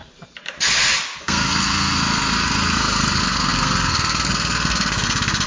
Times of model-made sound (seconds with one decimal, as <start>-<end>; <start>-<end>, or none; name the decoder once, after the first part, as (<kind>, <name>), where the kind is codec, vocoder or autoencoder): 1.2-5.5 (codec, SNAC)